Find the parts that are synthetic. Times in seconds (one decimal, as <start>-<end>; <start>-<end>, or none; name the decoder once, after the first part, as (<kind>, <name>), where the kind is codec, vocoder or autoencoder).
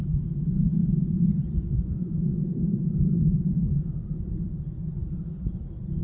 0.0-5.0 (vocoder, BigVGAN v2)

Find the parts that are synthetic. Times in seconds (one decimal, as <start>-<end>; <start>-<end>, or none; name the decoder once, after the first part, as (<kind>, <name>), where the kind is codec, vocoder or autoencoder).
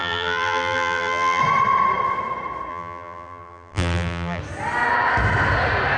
0.0-1.4 (vocoder, BigVGAN v2); 2.7-4.4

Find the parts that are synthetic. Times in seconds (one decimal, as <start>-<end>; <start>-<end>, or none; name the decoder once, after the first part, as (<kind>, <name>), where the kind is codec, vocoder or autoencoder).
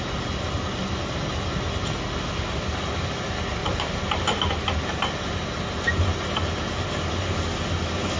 3.6-4.6 (vocoder, BigVGAN v2)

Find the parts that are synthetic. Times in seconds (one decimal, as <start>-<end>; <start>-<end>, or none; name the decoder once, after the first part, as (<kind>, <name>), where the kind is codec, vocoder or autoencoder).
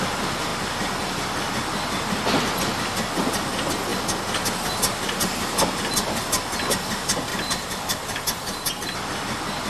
7.3-8.7 (vocoder, BigVGAN v2)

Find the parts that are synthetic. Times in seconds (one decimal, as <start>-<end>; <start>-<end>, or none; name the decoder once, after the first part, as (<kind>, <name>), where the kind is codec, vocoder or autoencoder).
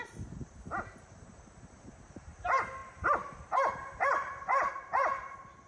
0.0-5.7 (vocoder, BigVGAN v2)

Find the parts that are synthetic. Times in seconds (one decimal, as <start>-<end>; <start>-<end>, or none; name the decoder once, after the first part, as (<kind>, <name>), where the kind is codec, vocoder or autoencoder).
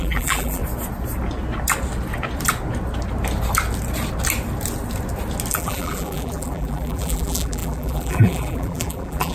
0.0-0.6 (vocoder, BigVGAN v2); 5.5-9.3